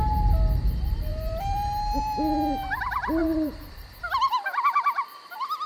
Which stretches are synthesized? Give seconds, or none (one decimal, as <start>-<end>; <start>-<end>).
1.1-2.0; 3.2-3.8